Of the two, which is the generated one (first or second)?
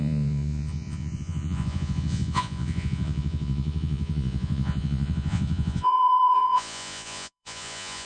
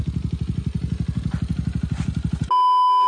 first